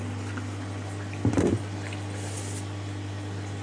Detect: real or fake real